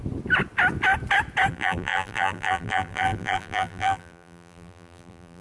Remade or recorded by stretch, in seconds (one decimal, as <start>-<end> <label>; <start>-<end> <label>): 0.0-1.5 recorded; 1.5-5.4 remade